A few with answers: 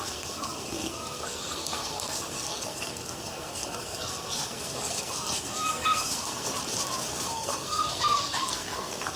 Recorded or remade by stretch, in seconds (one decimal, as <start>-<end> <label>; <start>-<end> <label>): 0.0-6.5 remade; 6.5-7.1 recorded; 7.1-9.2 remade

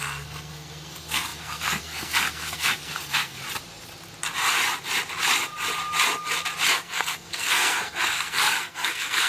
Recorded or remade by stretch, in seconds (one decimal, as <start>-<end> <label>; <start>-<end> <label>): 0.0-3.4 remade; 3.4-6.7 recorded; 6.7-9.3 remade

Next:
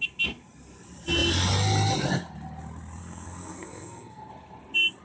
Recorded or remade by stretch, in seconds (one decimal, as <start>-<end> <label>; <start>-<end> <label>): 0.0-3.0 recorded; 3.0-4.3 remade; 4.3-5.0 recorded